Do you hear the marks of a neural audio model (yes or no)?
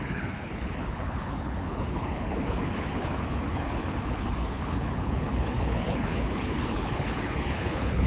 yes